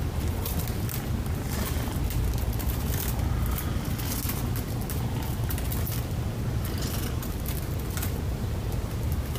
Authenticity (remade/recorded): recorded